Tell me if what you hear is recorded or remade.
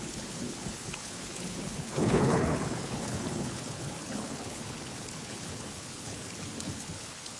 remade